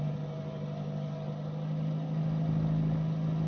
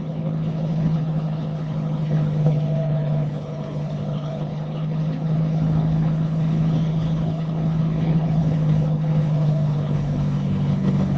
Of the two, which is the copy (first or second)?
second